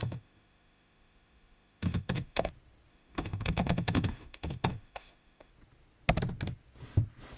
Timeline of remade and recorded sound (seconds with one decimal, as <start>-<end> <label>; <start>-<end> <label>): 0.0-2.5 remade; 2.5-2.9 recorded; 2.9-5.5 remade; 5.5-7.4 recorded